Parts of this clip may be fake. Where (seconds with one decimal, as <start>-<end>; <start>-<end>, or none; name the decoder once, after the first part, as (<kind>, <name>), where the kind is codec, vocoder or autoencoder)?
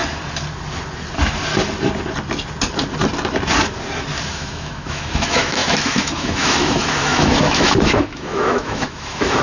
4.3-9.4 (autoencoder, DAC-VAE)